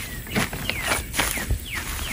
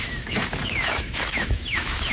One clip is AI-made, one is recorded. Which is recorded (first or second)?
first